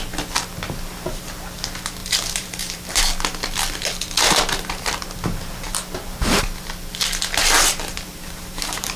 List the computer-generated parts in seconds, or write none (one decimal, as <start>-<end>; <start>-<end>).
2.0-3.0; 7.9-9.0